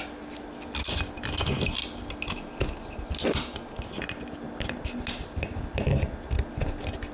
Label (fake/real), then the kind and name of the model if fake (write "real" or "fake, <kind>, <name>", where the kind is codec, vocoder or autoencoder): real